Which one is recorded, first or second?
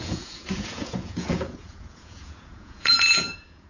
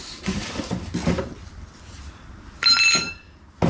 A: second